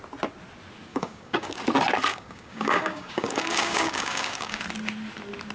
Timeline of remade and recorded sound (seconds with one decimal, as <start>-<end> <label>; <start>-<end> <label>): 0.0-0.9 recorded; 0.9-1.5 remade; 1.5-2.1 recorded; 2.1-4.6 remade; 4.6-5.5 recorded